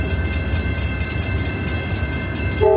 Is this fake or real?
real